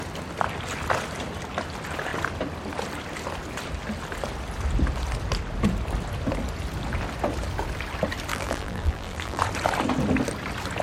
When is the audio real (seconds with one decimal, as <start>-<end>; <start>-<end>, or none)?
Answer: 0.0-8.3; 9.4-10.8